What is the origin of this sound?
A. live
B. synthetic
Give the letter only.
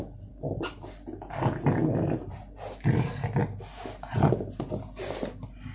A